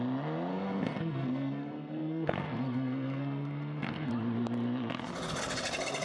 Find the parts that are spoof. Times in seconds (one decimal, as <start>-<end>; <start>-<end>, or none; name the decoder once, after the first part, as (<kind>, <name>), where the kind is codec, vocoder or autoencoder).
0.5-4.1 (codec, SNAC)